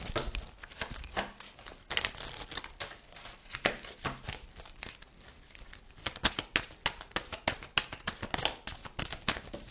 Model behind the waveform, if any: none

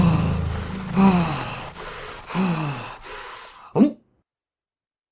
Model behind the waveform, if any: none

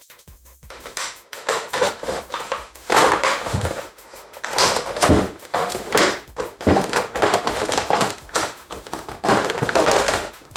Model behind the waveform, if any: autoencoder, DAC-VAE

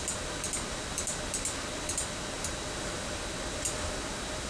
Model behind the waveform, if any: none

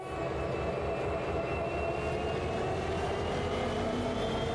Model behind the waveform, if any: none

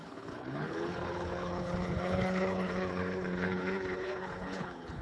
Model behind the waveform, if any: codec, HILCodec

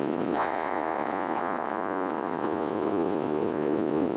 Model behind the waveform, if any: vocoder, Vocos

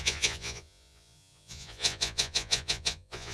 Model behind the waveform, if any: vocoder, Vocos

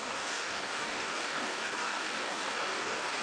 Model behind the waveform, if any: codec, DAC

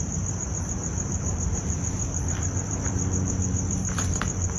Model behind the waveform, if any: vocoder, BigVGAN v2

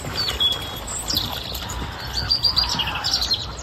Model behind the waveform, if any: vocoder, BigVGAN v2